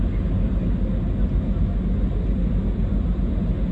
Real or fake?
real